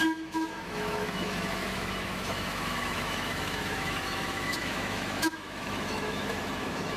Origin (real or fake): fake